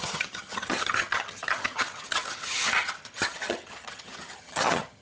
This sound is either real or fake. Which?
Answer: fake